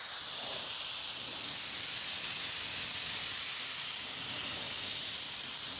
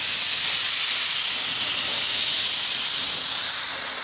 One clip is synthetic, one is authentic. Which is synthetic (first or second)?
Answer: first